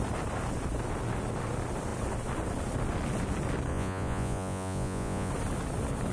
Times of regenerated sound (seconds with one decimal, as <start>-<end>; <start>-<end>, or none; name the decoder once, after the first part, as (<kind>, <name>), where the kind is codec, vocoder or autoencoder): 3.7-5.3 (vocoder, Vocos)